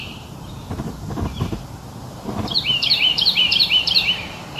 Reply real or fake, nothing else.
fake